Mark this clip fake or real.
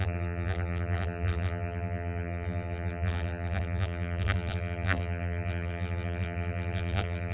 fake